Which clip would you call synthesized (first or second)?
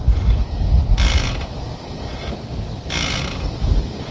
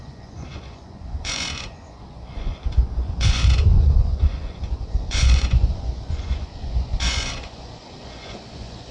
second